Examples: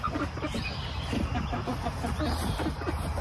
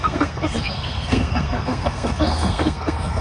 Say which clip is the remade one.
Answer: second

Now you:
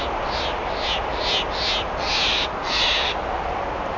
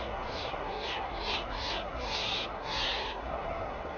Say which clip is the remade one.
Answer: second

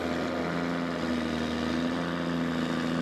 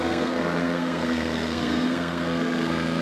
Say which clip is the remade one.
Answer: second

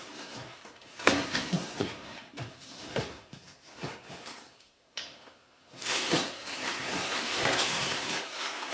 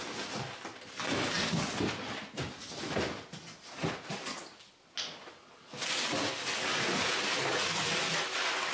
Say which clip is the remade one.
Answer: first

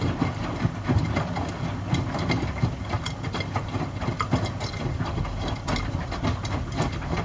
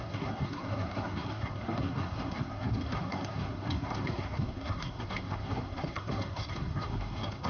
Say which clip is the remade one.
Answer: second